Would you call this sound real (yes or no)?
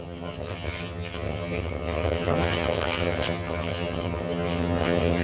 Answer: no